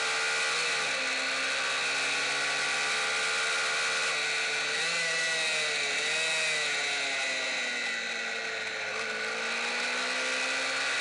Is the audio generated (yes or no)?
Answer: no